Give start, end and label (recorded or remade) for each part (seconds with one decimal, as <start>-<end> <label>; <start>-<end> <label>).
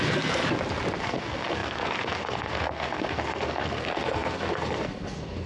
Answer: 0.0-0.4 remade; 0.4-1.0 recorded; 1.0-5.5 remade